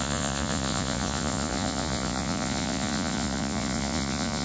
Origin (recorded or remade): remade